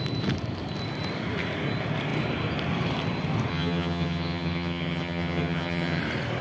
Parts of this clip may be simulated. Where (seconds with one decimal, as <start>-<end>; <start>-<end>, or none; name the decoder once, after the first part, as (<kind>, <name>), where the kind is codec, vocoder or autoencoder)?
3.5-6.0 (vocoder, HiFi-GAN)